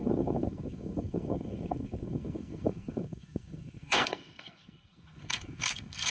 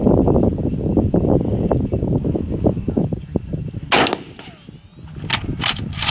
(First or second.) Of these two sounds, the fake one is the first